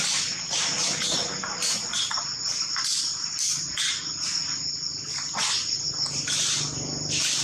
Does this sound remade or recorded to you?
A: recorded